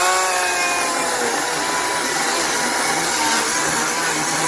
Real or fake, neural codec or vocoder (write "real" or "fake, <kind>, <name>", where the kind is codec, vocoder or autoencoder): real